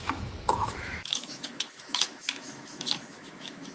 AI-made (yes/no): yes